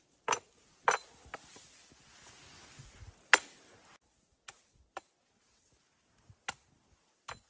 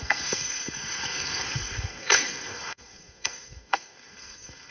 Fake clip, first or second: second